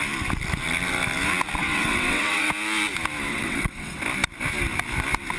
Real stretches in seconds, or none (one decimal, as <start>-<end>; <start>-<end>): 0.0-1.6; 2.5-3.3; 4.0-5.4